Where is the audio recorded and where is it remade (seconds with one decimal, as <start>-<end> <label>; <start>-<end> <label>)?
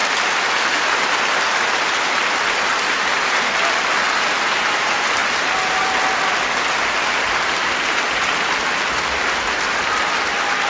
0.0-10.7 recorded